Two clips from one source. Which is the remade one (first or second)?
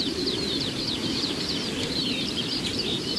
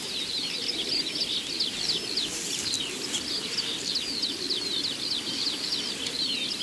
first